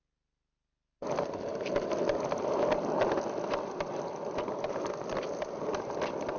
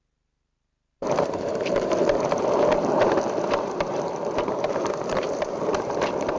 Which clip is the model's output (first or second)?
second